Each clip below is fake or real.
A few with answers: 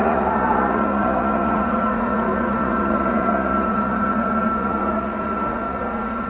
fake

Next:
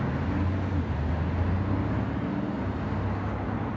real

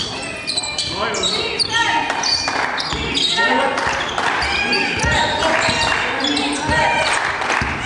real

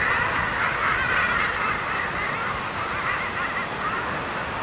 real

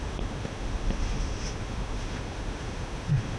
fake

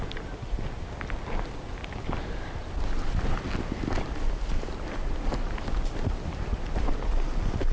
real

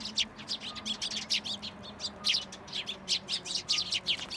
real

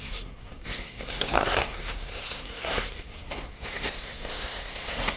fake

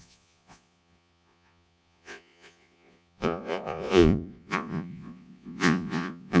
fake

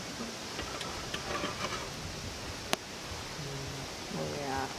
real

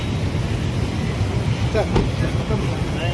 real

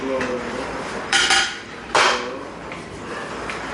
fake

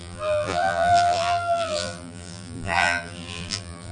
fake